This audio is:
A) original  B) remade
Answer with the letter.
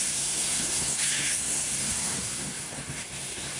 B